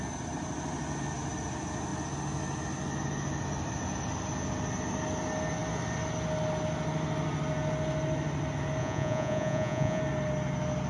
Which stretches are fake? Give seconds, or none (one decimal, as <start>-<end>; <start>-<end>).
8.8-10.0